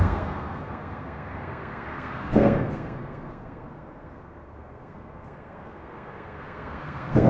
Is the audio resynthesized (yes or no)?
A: yes